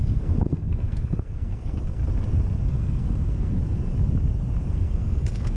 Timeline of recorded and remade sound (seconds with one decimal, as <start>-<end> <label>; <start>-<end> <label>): 0.0-2.0 remade; 2.0-2.7 recorded; 2.7-3.6 remade; 3.6-4.7 recorded; 4.7-5.6 remade